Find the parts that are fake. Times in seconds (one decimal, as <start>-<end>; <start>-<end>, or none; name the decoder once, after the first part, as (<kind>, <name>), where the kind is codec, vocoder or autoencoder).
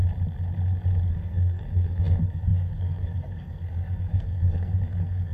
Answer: 1.1-5.3 (codec, SNAC)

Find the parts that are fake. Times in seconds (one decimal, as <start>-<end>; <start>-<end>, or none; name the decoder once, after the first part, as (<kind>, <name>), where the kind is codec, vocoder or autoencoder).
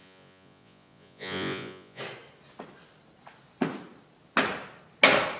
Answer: 0.0-2.0 (vocoder, Vocos)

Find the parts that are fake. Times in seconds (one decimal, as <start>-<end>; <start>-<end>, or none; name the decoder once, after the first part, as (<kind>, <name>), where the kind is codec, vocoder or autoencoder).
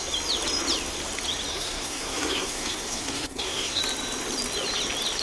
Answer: 1.5-3.8 (codec, SNAC)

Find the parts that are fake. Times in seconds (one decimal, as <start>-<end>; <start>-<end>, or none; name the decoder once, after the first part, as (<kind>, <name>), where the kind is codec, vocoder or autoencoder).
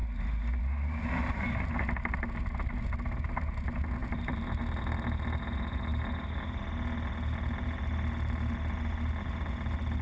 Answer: 4.0-4.6 (vocoder, BigVGAN v2)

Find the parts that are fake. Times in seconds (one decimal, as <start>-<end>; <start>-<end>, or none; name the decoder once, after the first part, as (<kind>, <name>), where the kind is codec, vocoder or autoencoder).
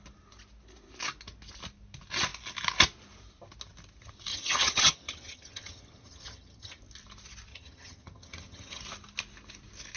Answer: 4.3-6.8 (vocoder, HiFi-GAN); 7.5-8.8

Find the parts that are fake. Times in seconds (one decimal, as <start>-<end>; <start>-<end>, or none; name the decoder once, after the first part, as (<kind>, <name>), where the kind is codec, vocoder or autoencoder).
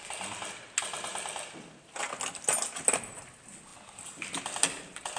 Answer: none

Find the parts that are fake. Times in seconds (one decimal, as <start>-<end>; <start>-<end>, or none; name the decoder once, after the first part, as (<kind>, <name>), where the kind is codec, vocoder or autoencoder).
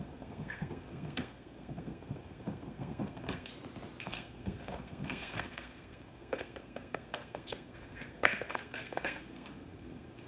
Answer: 0.0-3.5 (codec, SNAC); 4.0-10.3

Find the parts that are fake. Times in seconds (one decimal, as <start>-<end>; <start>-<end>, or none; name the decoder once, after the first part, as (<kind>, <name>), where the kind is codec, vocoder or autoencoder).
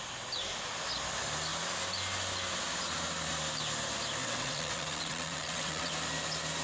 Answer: 4.2-5.9 (vocoder, WaveNeXt)